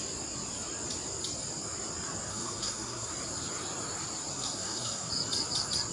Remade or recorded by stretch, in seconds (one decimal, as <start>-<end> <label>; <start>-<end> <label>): 0.0-2.3 recorded; 2.3-3.1 remade; 3.1-4.3 recorded; 4.3-5.1 remade; 5.1-5.9 recorded